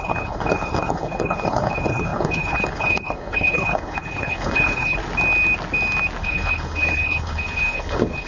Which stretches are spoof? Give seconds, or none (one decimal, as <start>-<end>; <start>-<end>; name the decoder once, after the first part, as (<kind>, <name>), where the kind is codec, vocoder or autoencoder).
0.0-5.0 (codec, HILCodec); 6.2-8.3